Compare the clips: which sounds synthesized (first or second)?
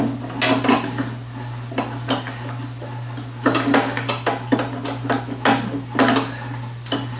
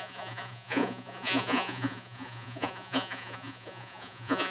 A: second